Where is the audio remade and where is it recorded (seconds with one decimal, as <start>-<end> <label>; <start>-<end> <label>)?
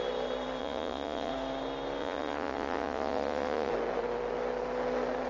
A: 0.0-0.6 recorded; 0.6-1.3 remade; 1.3-2.0 recorded; 2.0-3.7 remade; 3.7-5.3 recorded